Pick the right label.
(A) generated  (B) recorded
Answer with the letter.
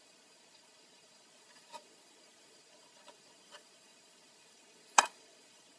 A